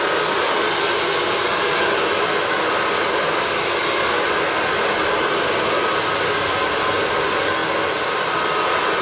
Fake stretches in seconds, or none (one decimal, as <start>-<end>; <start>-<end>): none